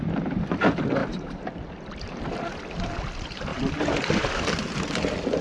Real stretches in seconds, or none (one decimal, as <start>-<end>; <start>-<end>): 0.0-1.0; 2.3-3.5; 4.9-5.4